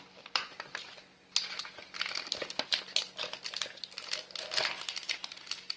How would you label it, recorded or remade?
recorded